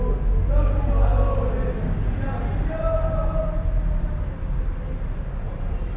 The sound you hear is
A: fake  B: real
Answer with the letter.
B